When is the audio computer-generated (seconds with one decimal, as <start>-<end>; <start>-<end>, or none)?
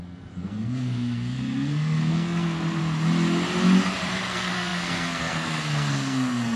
0.0-2.8; 4.2-6.6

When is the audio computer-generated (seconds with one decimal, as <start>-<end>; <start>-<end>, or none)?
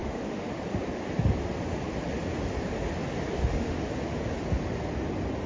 0.0-0.5; 3.4-3.9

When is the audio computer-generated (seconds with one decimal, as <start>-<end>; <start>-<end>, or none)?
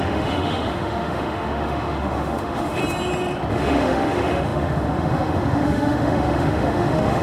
0.0-2.8; 3.5-7.2